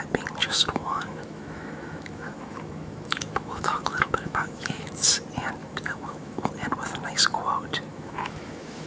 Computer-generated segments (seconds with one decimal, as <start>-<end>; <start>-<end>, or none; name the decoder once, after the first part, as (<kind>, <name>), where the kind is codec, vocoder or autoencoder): 0.4-5.1 (autoencoder, DAC-VAE); 5.6-6.5; 7.9-8.9